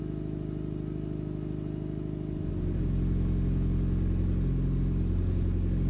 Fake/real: real